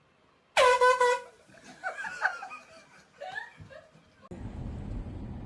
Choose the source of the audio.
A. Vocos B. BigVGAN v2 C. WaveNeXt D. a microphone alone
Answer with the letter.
D